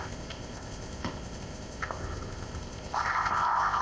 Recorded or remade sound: remade